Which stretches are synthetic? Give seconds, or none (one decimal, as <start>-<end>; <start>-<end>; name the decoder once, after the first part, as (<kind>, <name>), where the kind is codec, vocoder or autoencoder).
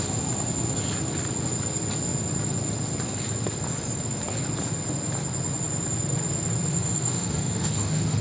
6.7-8.2 (autoencoder, DAC-VAE)